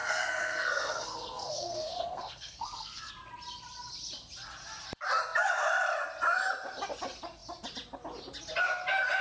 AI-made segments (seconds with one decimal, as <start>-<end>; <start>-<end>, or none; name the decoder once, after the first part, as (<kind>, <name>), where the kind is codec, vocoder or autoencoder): 0.0-3.1 (codec, SNAC)